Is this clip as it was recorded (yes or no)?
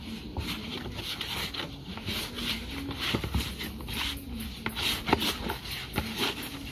yes